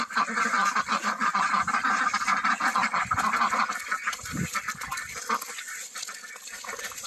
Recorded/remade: recorded